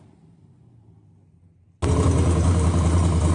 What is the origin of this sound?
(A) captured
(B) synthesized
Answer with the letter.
A